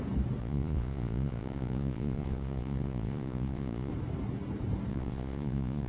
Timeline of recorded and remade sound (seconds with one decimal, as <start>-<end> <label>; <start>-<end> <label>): 0.0-0.4 recorded; 0.4-3.9 remade; 3.9-4.9 recorded; 4.9-5.9 remade